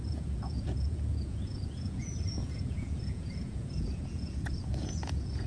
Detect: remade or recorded remade